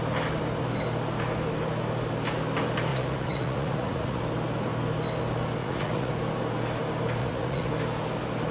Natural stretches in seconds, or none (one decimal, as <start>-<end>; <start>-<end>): 0.0-2.9; 4.2-5.6; 6.1-7.2; 7.7-8.5